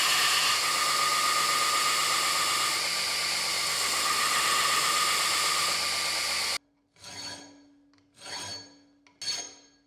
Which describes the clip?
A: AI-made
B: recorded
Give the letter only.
B